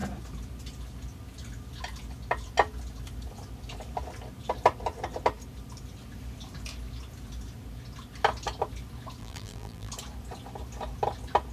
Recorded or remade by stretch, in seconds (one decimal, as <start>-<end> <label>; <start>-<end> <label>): 0.0-9.2 recorded; 9.2-9.9 remade; 9.9-11.5 recorded